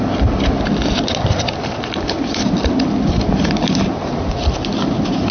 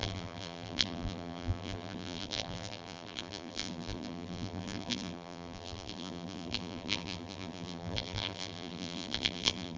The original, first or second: first